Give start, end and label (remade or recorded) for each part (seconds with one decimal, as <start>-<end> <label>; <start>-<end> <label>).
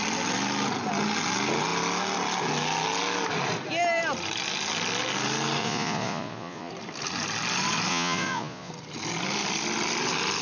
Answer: 0.0-5.6 recorded; 5.6-6.7 remade; 6.7-7.9 recorded; 7.9-8.7 remade; 8.7-10.4 recorded